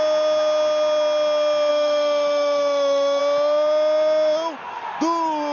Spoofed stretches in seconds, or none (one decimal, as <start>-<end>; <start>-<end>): 1.7-3.2